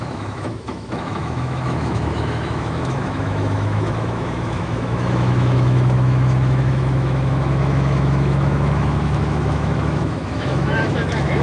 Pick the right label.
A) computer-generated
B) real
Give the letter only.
A